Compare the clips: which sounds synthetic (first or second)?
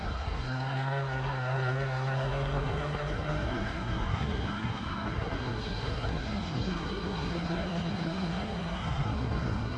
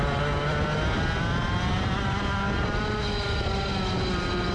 first